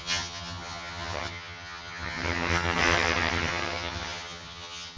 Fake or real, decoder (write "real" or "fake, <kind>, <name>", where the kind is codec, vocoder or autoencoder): fake, vocoder, HiFi-GAN